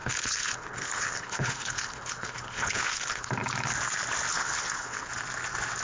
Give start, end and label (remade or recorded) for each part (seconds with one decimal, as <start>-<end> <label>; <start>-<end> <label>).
0.0-3.3 remade; 3.3-4.3 recorded; 4.3-5.1 remade; 5.1-5.8 recorded